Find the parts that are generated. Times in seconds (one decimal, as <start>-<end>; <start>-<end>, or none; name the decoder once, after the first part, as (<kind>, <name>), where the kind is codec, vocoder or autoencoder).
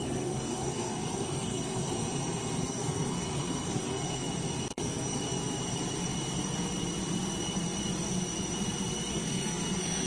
0.0-1.9 (codec, SNAC); 2.6-4.2; 4.7-5.2; 9.1-10.1